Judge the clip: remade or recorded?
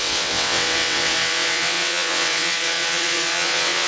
remade